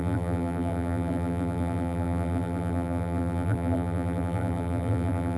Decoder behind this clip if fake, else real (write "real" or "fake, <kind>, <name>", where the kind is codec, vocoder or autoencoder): fake, vocoder, BigVGAN v2